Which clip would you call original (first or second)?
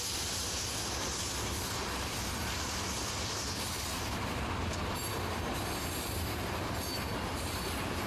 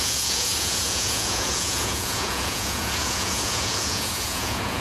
first